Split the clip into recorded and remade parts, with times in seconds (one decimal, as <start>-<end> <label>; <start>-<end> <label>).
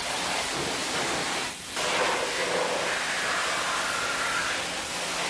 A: 0.0-5.3 recorded